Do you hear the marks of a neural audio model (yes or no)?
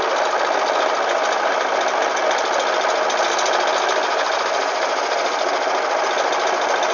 no